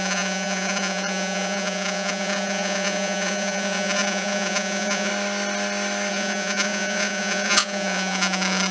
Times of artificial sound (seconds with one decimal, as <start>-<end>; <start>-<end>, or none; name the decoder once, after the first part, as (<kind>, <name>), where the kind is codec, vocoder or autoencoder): 0.0-5.1 (vocoder, Vocos); 6.1-8.7